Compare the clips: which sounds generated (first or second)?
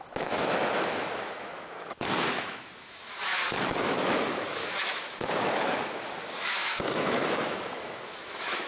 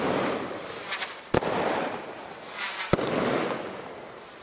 first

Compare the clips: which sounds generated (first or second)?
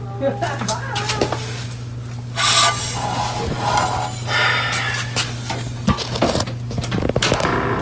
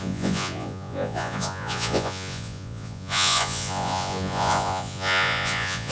second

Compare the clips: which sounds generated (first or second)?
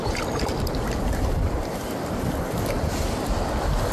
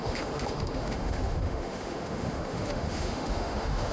second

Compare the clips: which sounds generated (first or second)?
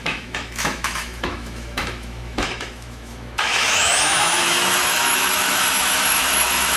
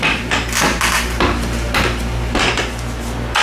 first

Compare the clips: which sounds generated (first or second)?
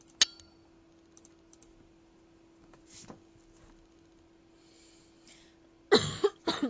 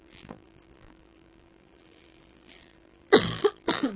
second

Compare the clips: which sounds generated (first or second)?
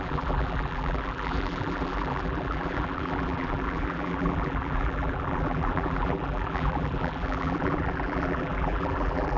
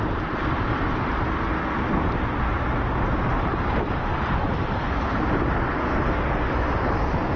first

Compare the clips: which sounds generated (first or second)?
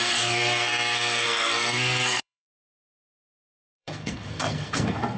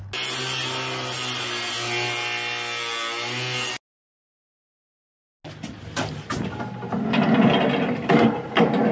first